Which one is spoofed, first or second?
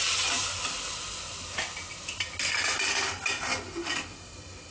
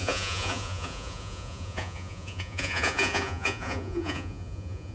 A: second